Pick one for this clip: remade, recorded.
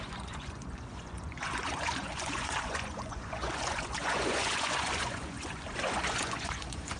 remade